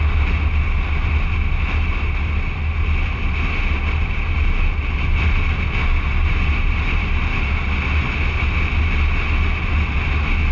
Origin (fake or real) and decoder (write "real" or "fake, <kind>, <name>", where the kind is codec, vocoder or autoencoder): real